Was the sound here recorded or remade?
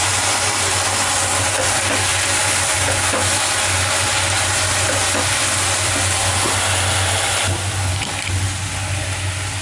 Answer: recorded